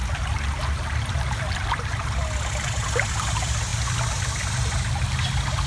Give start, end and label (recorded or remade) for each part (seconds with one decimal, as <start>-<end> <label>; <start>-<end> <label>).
0.0-5.7 recorded